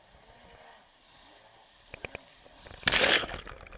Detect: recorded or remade recorded